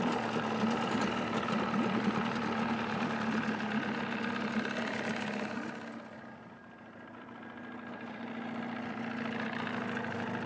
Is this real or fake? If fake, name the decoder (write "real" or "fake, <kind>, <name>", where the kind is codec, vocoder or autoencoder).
real